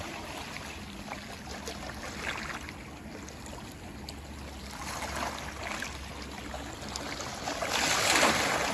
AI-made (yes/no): no